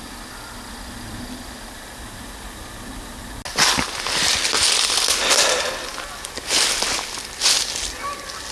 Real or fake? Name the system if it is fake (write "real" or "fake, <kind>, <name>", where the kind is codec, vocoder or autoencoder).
real